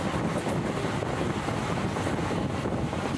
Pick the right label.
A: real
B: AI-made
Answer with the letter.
A